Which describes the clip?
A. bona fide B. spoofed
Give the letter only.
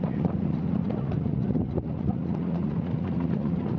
B